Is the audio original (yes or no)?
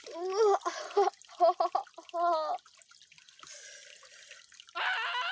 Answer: yes